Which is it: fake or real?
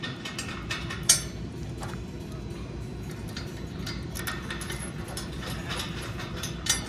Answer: real